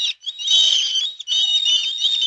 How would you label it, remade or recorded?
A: recorded